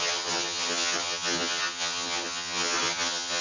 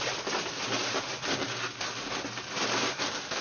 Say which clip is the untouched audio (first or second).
second